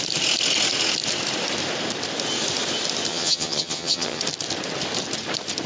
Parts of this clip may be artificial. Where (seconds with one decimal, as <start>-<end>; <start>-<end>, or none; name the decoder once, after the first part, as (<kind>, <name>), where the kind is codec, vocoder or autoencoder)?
3.1-4.2 (vocoder, HiFi-GAN)